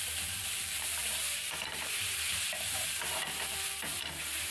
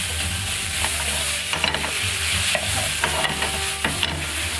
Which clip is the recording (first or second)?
second